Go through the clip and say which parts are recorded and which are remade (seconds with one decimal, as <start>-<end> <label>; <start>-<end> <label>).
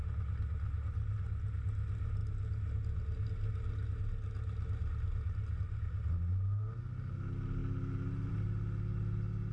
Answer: 0.0-9.5 recorded